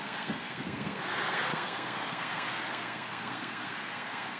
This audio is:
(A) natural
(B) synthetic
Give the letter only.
B